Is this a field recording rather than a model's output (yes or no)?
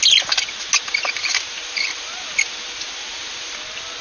yes